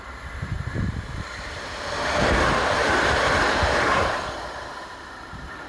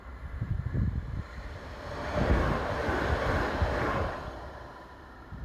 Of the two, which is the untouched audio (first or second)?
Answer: second